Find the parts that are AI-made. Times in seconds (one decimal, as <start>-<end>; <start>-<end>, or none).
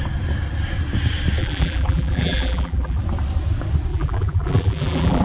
1.4-3.0; 3.9-5.2